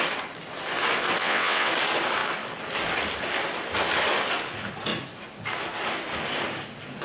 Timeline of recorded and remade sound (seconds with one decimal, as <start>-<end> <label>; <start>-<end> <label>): 0.0-1.2 recorded; 1.2-1.7 remade; 1.7-7.0 recorded